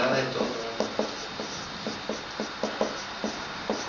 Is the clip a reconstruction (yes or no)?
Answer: no